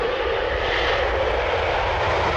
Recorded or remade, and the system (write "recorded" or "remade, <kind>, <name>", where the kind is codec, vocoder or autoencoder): recorded